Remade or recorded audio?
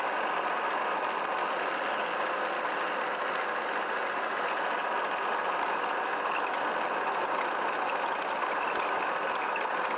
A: recorded